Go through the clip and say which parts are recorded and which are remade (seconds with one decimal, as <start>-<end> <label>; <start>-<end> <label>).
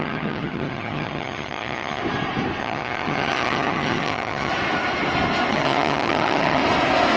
0.0-2.0 remade; 2.0-2.6 recorded; 2.6-4.5 remade; 4.5-5.5 recorded; 5.5-6.6 remade; 6.6-7.2 recorded